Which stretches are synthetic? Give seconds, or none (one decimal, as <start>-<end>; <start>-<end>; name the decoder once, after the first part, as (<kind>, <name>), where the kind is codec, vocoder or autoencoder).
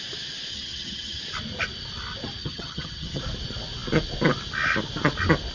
0.5-1.2 (vocoder, HiFi-GAN); 2.4-3.2